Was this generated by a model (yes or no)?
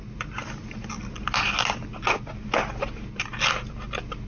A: no